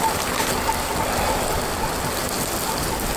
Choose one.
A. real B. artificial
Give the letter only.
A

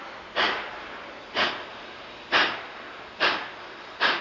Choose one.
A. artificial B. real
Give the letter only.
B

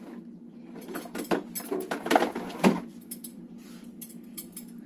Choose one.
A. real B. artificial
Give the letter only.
A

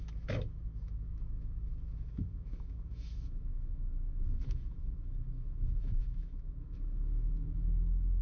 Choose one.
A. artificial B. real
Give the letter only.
A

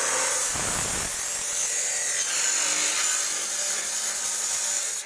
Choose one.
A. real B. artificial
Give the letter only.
A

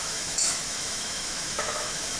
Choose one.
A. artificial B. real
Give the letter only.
A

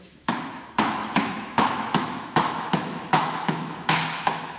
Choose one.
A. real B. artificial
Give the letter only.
B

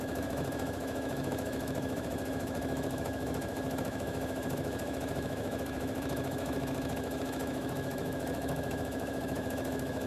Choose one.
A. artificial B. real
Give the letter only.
A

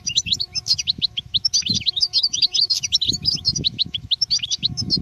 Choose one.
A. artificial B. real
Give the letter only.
A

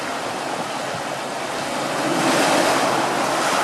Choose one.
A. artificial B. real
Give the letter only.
B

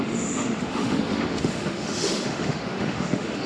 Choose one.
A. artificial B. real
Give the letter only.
A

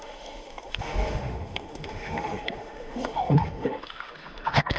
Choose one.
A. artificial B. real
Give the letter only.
A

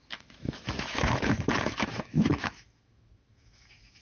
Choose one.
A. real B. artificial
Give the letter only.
B